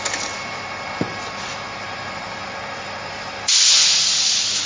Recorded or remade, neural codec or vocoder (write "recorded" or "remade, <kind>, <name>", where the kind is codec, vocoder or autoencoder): recorded